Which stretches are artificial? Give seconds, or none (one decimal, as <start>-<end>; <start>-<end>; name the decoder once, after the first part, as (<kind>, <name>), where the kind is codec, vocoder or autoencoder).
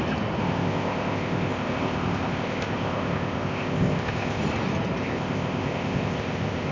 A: 0.4-4.4 (codec, ZipCodec); 5.0-6.7